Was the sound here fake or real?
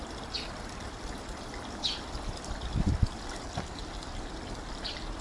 fake